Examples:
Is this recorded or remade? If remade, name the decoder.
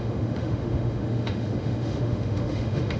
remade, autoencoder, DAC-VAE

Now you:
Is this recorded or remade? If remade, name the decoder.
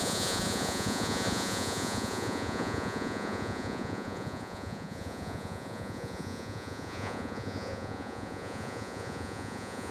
remade, vocoder, Vocos